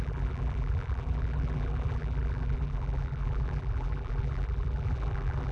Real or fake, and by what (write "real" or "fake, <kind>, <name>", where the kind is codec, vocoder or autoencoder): fake, vocoder, BigVGAN v2